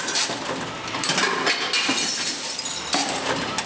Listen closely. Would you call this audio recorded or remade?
recorded